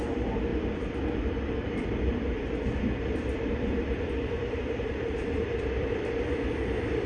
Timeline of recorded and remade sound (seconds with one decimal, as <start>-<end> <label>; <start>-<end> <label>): 0.0-0.5 remade; 0.5-1.2 recorded; 1.2-7.1 remade